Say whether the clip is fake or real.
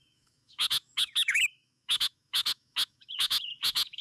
fake